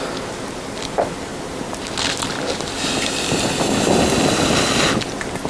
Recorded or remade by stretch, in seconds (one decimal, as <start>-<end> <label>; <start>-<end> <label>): 0.0-5.5 recorded